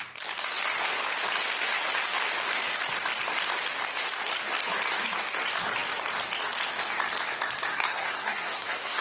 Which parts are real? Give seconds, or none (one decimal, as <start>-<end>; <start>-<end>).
0.0-7.7